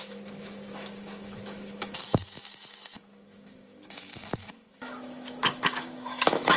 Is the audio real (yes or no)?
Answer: no